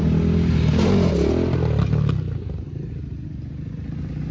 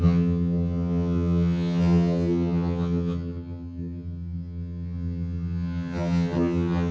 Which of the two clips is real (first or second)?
first